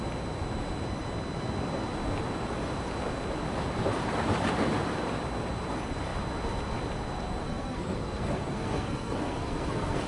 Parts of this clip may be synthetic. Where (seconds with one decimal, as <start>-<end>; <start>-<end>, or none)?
7.4-10.1